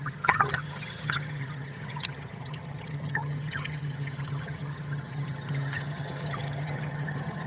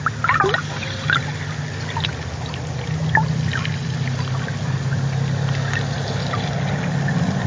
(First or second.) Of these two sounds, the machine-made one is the first